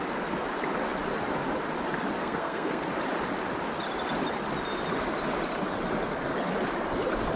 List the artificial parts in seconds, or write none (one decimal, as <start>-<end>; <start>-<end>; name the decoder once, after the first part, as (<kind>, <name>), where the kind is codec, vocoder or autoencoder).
2.2-2.8 (codec, SNAC)